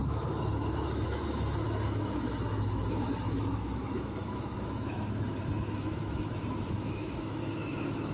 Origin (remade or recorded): remade